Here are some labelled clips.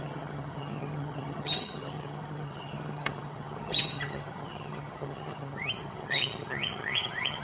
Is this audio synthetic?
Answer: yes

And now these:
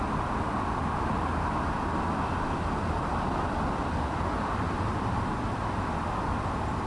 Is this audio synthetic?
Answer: no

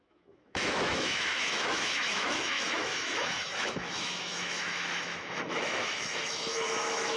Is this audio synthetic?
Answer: yes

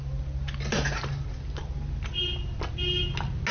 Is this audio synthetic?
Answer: no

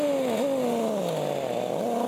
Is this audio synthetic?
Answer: no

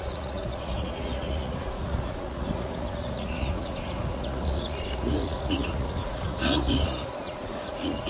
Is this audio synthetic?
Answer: yes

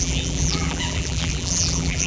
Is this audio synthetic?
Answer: yes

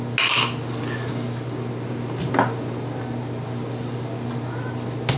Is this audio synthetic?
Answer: no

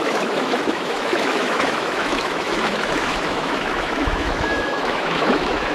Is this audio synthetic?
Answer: yes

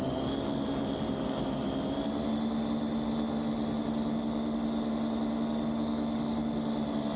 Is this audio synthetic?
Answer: no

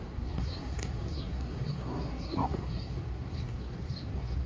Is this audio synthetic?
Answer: yes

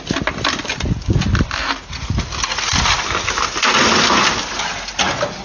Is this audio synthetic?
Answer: no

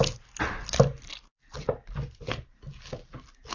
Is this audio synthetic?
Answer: no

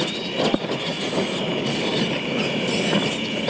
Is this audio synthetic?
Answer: no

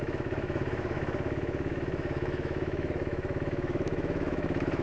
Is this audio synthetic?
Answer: yes